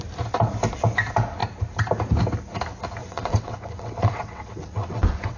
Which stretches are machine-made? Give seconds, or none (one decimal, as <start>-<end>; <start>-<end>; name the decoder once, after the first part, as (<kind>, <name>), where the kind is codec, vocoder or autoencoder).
3.0-5.4 (vocoder, WaveNeXt)